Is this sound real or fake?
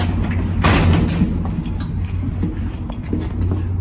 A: real